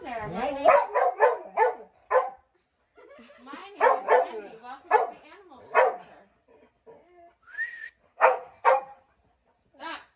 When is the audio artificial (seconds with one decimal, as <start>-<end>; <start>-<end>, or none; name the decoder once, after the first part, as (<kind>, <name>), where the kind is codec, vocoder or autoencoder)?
8.1-8.7 (codec, SNAC)